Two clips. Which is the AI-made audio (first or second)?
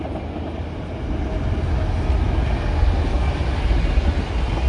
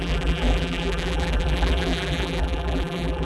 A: second